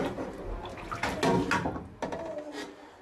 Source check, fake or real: real